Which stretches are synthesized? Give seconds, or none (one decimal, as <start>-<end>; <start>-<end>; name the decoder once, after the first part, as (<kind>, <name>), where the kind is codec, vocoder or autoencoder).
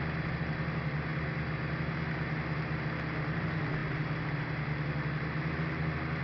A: none